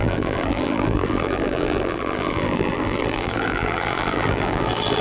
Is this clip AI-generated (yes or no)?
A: yes